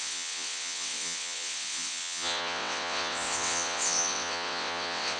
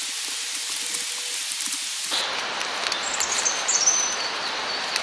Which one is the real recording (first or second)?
second